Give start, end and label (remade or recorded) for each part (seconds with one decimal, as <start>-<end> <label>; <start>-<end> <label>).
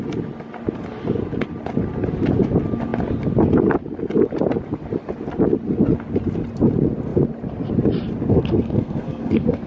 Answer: 0.0-8.3 recorded; 8.3-9.7 remade